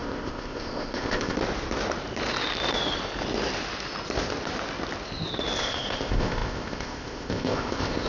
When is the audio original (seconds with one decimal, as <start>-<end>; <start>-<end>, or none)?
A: 1.4-5.6